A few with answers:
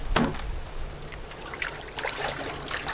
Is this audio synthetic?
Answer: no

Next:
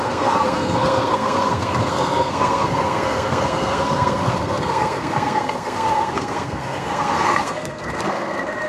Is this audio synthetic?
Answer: yes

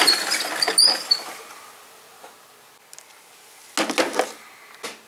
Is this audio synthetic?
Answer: no